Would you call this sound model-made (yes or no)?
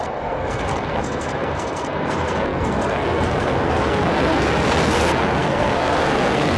yes